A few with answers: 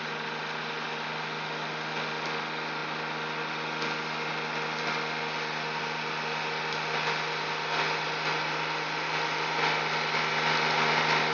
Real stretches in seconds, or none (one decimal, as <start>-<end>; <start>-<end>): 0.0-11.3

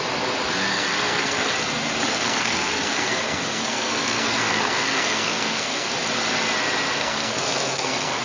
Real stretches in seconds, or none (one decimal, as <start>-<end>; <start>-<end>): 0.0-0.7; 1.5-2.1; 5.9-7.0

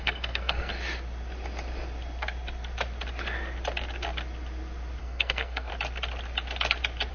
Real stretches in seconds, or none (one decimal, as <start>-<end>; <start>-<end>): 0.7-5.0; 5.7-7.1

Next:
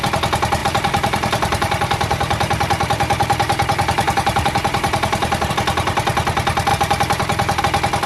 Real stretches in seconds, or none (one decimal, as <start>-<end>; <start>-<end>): 0.0-0.6; 5.5-6.7; 7.6-8.1